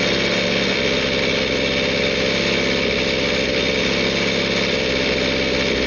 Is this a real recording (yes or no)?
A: yes